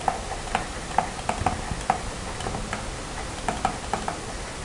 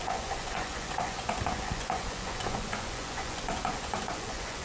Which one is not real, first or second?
second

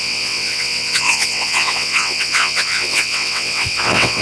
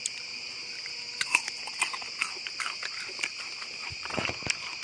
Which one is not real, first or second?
first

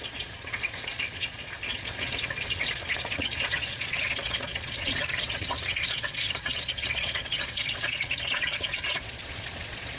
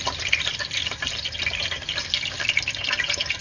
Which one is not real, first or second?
first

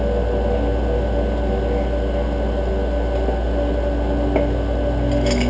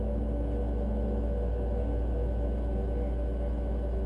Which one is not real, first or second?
second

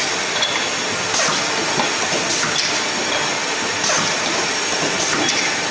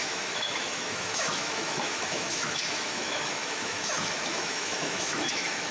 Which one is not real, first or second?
second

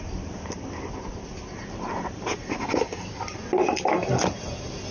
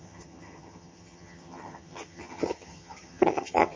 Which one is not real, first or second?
second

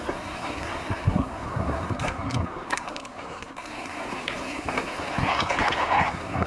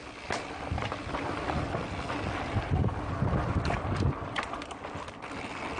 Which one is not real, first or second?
first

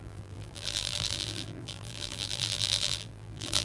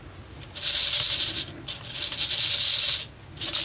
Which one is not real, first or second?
first